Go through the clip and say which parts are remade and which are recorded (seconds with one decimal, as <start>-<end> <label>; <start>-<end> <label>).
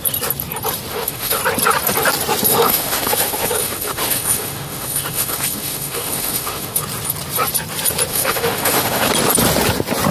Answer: 0.0-0.9 recorded; 0.9-1.4 remade; 1.4-2.5 recorded; 2.5-6.8 remade; 6.8-8.1 recorded; 8.1-9.1 remade; 9.1-10.1 recorded